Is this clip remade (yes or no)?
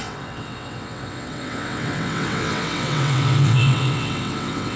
yes